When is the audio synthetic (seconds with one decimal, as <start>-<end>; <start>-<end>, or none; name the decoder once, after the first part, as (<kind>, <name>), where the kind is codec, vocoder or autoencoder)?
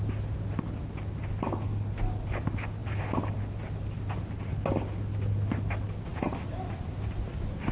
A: none